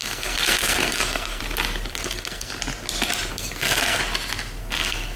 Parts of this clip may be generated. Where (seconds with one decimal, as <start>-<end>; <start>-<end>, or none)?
0.0-1.4; 1.9-2.5; 3.3-4.0; 4.6-5.2